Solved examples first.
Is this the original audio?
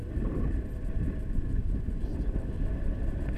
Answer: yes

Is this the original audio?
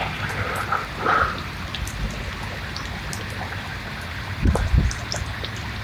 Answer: yes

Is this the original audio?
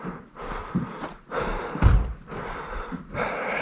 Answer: yes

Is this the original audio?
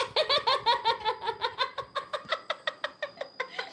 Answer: yes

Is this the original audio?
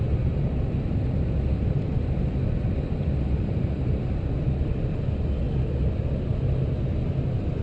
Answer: yes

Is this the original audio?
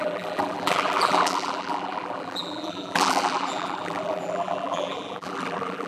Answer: no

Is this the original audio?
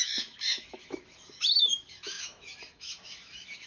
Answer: no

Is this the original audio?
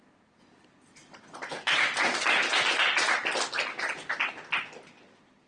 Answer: yes